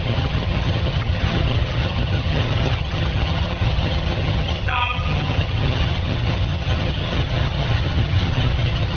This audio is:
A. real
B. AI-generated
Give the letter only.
B